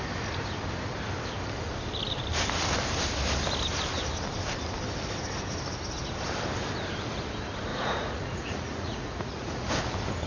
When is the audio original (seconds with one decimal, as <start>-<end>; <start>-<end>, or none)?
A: 0.0-7.7; 9.7-10.3